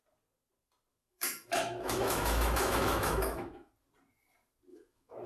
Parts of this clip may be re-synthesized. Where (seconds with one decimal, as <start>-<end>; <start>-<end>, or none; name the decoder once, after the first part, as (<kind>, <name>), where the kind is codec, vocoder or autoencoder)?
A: 0.9-3.7 (autoencoder, DAC-VAE); 4.7-5.3